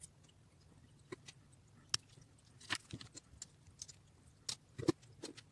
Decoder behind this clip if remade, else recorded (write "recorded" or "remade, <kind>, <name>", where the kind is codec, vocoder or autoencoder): recorded